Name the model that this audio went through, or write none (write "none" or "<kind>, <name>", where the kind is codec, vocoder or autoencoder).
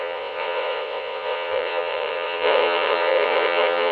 vocoder, WaveNeXt